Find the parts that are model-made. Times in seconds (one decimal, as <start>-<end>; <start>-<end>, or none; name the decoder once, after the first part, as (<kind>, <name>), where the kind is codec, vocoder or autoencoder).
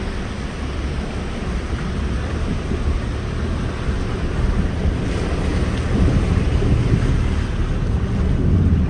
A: none